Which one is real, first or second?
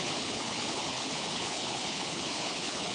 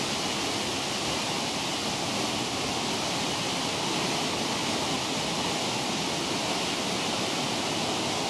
second